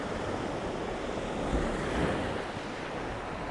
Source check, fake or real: real